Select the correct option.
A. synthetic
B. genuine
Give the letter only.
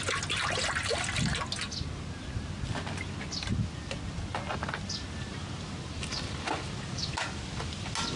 B